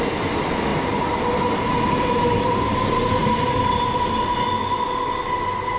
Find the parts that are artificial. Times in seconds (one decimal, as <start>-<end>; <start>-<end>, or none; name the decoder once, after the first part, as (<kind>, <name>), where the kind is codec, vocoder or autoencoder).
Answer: 0.7-4.1 (vocoder, BigVGAN v2)